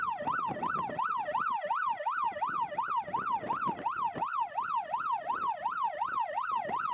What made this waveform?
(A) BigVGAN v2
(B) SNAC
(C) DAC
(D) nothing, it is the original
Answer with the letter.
A